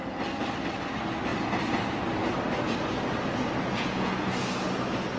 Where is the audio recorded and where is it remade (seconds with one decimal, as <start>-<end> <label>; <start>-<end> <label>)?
0.0-3.6 recorded; 3.6-4.5 remade; 4.5-5.2 recorded